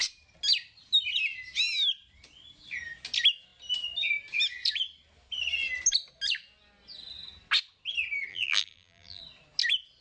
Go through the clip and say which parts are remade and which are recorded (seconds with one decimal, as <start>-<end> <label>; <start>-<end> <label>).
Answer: 0.0-8.3 recorded; 8.3-9.2 remade; 9.2-10.0 recorded